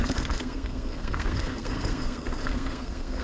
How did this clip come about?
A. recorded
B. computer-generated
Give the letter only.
B